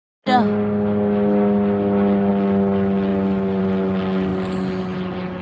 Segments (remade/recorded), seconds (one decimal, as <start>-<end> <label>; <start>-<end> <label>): 0.0-5.4 recorded